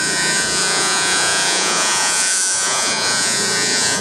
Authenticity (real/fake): fake